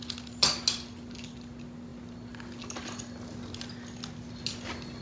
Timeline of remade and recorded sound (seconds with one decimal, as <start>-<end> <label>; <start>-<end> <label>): 0.0-5.0 recorded